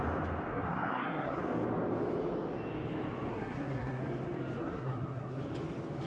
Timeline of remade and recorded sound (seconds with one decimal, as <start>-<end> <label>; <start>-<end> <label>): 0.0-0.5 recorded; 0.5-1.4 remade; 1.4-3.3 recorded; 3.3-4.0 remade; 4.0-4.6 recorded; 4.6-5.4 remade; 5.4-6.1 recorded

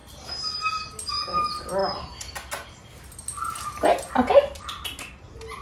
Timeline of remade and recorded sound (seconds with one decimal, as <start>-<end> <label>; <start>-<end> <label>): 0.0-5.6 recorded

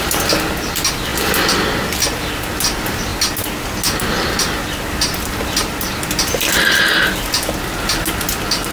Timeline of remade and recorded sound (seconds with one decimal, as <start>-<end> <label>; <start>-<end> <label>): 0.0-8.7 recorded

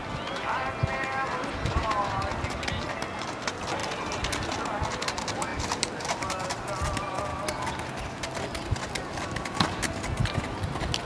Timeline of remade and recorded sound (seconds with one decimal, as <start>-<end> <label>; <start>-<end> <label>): 0.0-5.5 recorded; 5.5-6.6 remade; 6.6-11.1 recorded

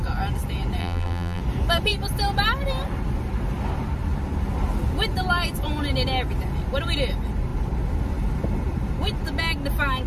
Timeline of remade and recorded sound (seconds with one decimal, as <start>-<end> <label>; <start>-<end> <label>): 0.0-0.8 recorded; 0.8-1.4 remade; 1.4-10.1 recorded

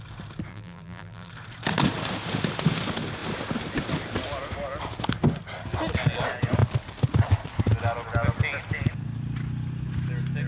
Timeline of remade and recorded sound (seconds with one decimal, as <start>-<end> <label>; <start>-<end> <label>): 0.0-0.5 recorded; 0.5-1.3 remade; 1.3-10.5 recorded

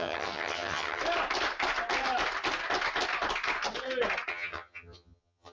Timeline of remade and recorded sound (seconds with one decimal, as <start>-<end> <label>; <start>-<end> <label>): 0.0-1.0 remade; 1.0-4.3 recorded; 4.3-5.5 remade

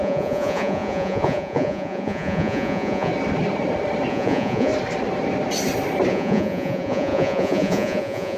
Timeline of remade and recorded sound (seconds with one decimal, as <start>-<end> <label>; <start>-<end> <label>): 0.0-3.1 remade; 3.1-4.1 recorded; 4.1-4.7 remade; 4.7-6.1 recorded; 6.1-8.4 remade